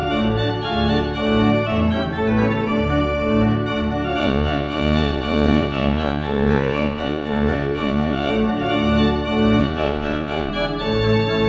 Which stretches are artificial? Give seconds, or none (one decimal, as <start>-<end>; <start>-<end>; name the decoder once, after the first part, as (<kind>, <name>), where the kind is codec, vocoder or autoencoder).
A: 4.2-8.3 (vocoder, Vocos); 9.6-10.5